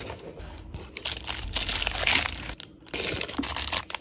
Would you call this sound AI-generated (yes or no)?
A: no